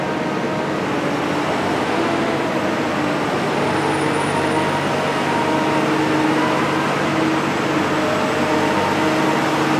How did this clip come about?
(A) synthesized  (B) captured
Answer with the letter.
B